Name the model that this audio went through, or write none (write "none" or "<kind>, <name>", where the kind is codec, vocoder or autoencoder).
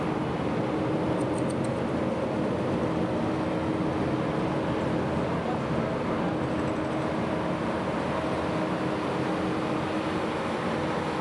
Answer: none